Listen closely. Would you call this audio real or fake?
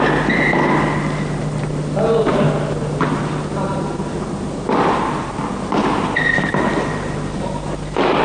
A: real